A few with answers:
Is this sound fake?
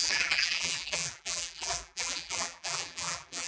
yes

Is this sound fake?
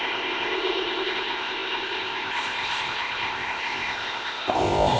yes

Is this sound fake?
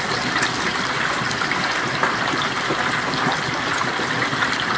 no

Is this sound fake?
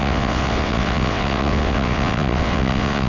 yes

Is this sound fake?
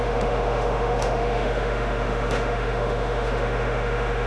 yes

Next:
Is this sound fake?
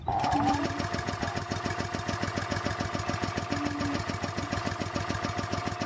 no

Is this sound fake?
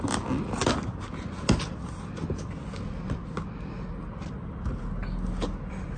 no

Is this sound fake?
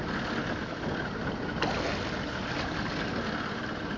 no